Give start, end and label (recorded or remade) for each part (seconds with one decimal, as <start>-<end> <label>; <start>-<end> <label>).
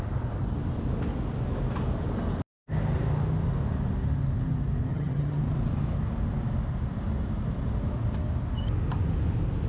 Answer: 0.0-4.9 recorded; 4.9-5.4 remade; 5.4-9.7 recorded